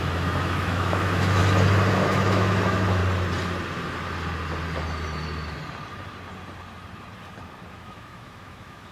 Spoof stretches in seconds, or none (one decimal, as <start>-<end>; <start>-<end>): 0.0-1.4; 1.9-3.0; 7.7-8.9